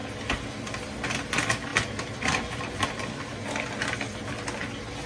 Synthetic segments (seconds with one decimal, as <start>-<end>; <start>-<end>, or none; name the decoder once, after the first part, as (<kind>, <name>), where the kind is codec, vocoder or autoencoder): none